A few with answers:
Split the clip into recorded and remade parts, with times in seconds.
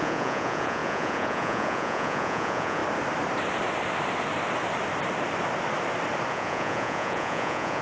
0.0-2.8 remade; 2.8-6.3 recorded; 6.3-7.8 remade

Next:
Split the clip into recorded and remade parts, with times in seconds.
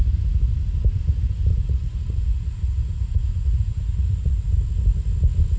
0.0-1.5 recorded; 1.5-4.5 remade; 4.5-5.6 recorded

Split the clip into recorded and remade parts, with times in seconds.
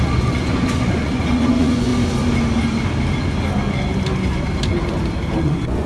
0.0-1.9 remade; 1.9-5.4 recorded; 5.4-5.9 remade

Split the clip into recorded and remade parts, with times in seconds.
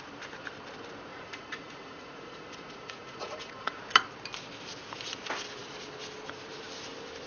0.0-1.1 recorded; 1.1-3.8 remade; 3.8-7.3 recorded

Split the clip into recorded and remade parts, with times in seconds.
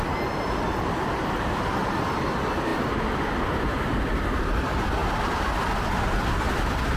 0.0-7.0 recorded